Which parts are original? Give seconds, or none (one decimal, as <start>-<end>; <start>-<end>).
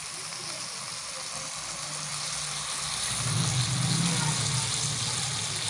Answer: 0.0-5.7